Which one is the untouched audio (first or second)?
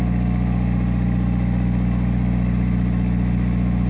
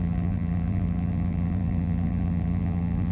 first